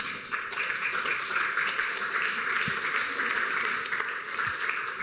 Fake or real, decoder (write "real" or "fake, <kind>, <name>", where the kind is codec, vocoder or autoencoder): fake, vocoder, BigVGAN v2